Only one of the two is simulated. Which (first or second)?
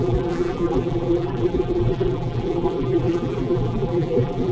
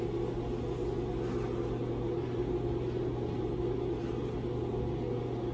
first